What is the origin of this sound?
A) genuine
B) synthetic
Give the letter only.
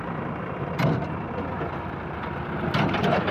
A